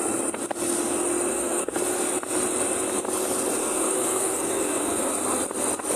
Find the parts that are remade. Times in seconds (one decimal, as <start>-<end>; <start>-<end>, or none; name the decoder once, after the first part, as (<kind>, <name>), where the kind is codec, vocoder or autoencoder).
1.3-1.8 (codec, SNAC); 3.6-5.1